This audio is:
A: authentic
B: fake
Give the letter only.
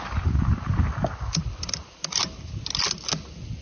A